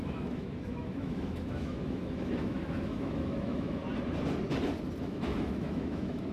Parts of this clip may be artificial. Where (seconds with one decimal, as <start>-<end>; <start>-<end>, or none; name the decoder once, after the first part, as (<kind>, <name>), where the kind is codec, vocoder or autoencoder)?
0.0-3.8 (autoencoder, DAC-VAE); 5.0-6.3